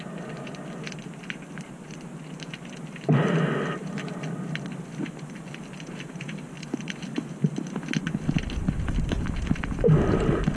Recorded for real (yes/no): yes